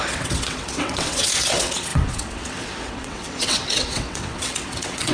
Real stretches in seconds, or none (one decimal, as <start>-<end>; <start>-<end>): none